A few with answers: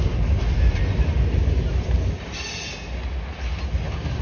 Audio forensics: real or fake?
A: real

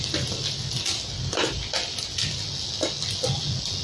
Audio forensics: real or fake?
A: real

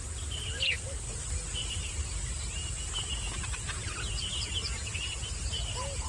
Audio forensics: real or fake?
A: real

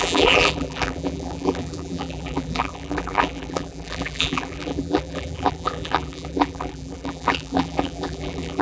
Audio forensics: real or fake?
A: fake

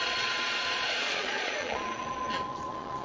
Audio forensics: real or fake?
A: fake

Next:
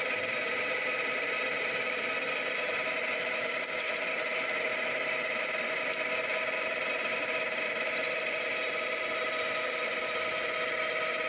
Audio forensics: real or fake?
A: real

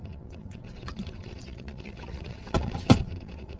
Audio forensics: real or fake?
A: fake